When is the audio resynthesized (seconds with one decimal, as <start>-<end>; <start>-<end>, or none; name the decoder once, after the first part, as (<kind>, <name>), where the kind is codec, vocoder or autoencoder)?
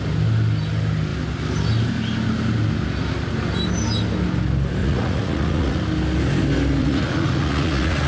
4.8-5.8 (vocoder, Vocos); 6.8-8.1